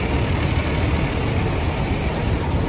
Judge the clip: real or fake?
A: real